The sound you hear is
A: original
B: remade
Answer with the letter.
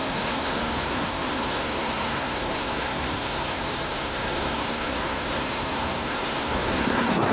B